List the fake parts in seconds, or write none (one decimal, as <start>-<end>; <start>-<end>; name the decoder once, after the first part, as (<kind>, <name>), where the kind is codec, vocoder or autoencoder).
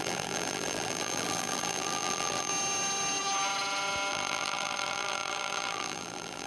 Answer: 0.0-2.5 (vocoder, BigVGAN v2); 4.1-6.5